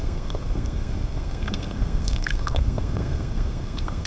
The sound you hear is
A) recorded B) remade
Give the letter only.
B